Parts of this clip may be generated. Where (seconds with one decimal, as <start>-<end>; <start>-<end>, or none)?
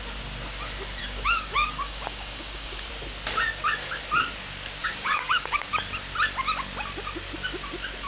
1.0-2.9; 4.8-5.7